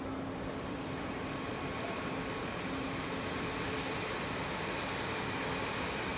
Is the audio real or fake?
real